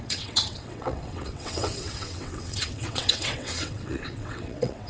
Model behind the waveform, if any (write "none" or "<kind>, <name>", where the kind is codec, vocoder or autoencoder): vocoder, WaveNeXt